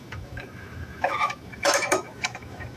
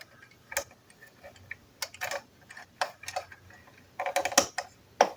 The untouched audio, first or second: second